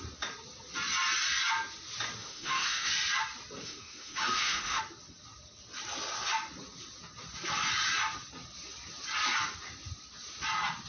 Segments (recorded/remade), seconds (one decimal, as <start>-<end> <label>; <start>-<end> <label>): 0.0-2.2 recorded; 2.2-2.9 remade; 2.9-3.6 recorded; 3.6-4.8 remade; 4.8-10.9 recorded